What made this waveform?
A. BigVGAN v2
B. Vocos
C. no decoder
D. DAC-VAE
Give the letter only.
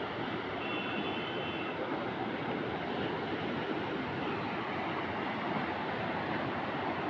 C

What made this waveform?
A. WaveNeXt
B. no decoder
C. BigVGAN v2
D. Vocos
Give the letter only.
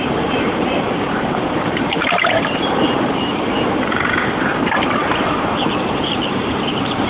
C